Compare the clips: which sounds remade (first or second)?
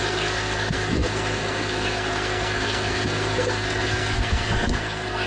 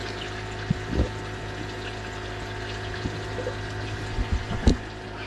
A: first